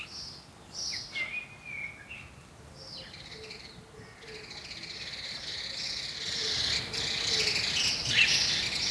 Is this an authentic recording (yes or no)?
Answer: yes